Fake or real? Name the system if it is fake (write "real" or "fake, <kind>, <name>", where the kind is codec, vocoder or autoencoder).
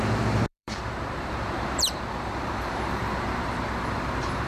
fake, vocoder, BigVGAN v2